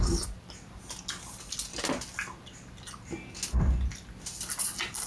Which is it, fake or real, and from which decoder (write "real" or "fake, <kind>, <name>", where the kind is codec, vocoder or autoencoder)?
real